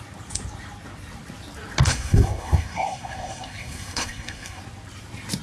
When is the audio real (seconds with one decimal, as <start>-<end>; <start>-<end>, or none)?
0.0-1.9; 4.6-5.4